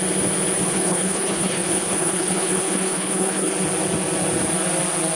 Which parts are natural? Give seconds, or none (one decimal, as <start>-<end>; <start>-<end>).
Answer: 0.0-0.6; 3.5-5.1